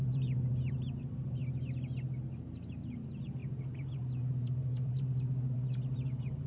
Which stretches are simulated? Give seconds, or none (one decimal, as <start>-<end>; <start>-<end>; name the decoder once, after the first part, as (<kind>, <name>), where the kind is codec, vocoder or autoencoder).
0.0-1.4 (vocoder, BigVGAN v2); 2.7-6.5